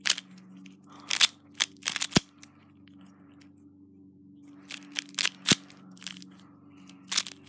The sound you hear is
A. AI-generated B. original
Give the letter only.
B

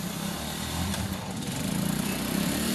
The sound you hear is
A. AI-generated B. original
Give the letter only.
A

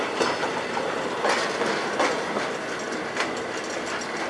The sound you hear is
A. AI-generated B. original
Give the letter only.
B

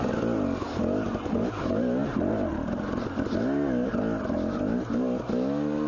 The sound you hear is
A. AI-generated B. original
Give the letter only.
B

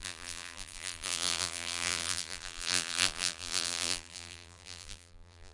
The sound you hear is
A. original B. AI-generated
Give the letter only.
B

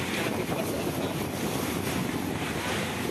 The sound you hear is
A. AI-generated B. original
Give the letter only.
B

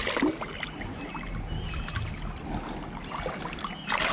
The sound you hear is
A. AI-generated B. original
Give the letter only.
B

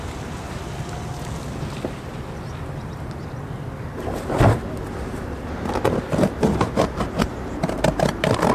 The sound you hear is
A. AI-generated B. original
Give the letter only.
B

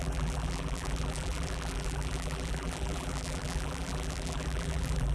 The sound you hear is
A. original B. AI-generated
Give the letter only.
B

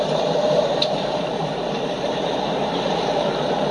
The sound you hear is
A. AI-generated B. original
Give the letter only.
A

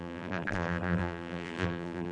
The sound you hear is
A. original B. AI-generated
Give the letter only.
B